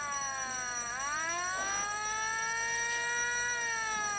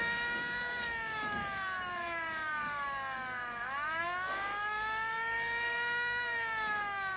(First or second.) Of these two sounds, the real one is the first